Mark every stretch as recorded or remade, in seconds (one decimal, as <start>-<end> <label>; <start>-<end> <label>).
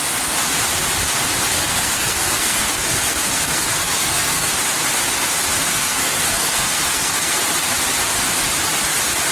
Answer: 0.0-1.5 recorded; 1.5-4.5 remade; 4.5-5.7 recorded; 5.7-7.4 remade; 7.4-9.3 recorded